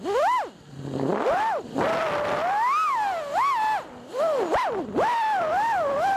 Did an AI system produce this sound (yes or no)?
no